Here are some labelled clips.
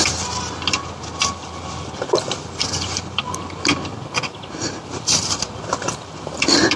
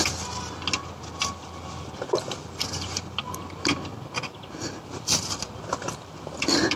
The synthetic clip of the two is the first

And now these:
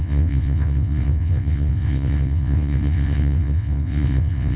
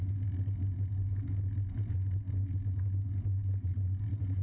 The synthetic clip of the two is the first